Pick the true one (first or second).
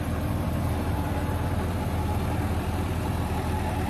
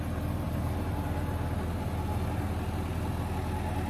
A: second